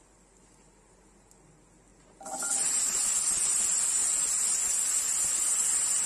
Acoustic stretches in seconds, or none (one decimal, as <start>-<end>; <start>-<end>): 0.0-6.1